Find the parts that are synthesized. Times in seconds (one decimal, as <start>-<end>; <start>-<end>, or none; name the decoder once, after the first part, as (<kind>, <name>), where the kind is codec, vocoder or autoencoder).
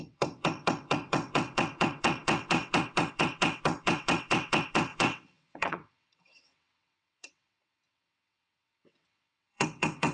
0.0-10.1 (vocoder, WaveNeXt)